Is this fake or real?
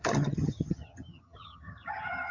fake